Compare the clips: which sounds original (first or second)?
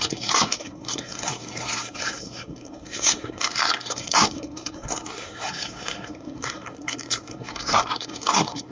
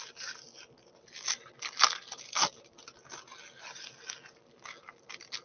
second